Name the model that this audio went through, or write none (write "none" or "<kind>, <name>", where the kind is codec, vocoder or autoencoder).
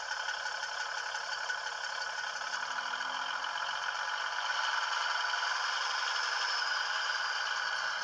none